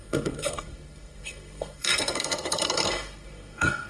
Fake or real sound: fake